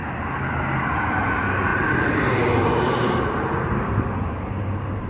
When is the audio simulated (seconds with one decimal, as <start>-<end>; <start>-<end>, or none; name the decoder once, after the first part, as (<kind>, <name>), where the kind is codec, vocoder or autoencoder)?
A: none

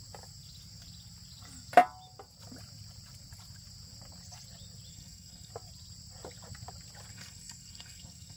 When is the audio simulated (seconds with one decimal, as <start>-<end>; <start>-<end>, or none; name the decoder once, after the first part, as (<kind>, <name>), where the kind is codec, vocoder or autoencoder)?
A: 4.9-5.5 (codec, SNAC); 7.1-8.4